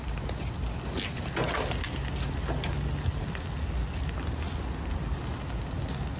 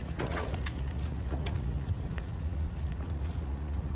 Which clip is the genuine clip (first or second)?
first